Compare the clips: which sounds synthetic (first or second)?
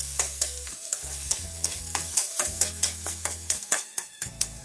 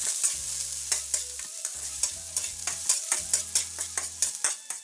first